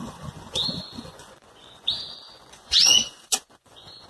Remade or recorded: remade